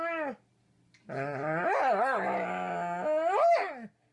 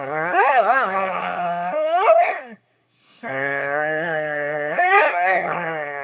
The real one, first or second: first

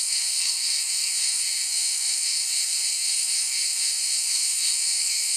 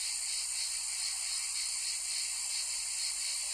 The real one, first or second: second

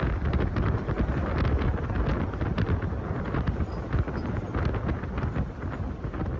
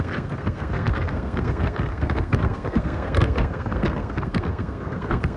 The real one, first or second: first